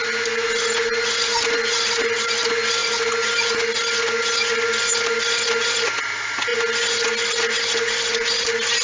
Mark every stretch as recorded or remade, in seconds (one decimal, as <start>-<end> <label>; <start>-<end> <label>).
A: 0.0-8.8 recorded